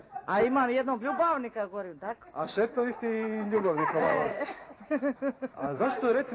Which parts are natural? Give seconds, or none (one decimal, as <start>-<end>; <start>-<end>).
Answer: 0.0-2.7; 5.8-6.3